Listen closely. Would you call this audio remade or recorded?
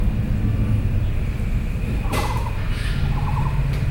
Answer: recorded